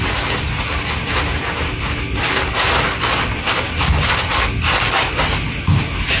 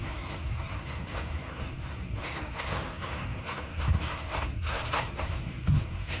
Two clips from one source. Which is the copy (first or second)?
second